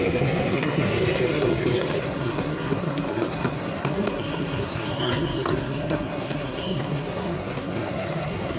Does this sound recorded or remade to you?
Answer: remade